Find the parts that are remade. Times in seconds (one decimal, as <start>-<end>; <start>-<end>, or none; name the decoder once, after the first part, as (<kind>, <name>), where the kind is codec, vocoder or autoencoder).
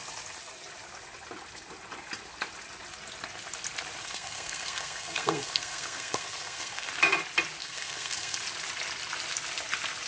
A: 4.0-6.9 (codec, SNAC); 7.6-8.4